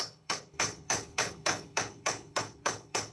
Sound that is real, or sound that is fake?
fake